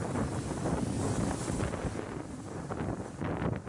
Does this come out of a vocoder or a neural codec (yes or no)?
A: no